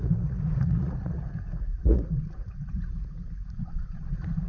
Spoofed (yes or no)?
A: yes